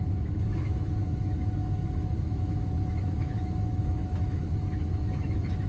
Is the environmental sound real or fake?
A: fake